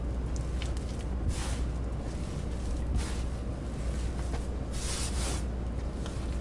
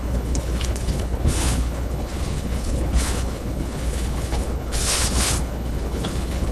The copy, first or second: second